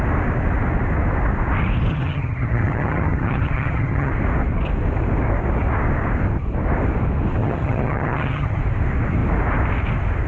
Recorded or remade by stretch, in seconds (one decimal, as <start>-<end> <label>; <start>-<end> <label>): 0.0-1.9 recorded; 1.9-4.1 remade; 4.1-7.4 recorded; 7.4-8.6 remade; 8.6-10.3 recorded